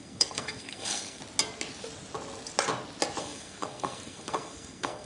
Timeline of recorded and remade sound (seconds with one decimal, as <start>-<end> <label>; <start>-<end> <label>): 0.0-1.2 remade; 1.2-3.2 recorded; 3.2-5.1 remade